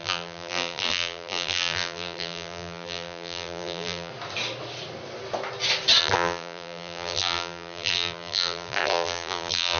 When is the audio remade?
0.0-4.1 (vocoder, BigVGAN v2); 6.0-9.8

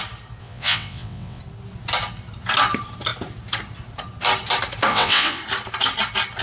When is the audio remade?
0.4-1.4 (vocoder, WaveNeXt); 4.9-5.4

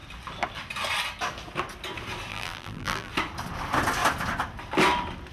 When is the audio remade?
2.3-3.1 (vocoder, BigVGAN v2)